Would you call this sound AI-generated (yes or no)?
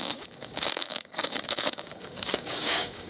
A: yes